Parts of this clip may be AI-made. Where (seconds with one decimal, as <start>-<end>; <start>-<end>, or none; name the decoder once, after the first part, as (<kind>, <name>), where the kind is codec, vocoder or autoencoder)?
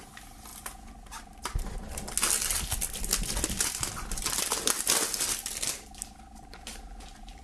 none